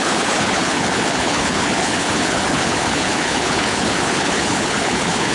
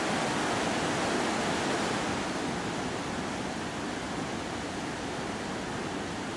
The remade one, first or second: first